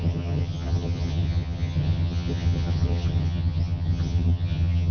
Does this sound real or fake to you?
fake